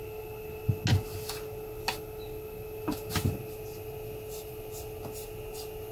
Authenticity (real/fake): real